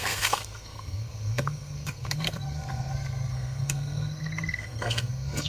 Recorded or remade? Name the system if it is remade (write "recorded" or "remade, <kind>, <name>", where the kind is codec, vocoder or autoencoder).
remade, codec, SNAC